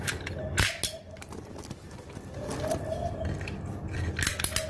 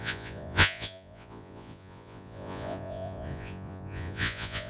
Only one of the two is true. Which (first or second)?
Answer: first